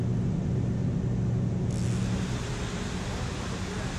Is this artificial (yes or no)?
no